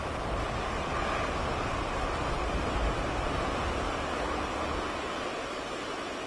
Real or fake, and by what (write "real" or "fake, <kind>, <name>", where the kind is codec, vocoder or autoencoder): real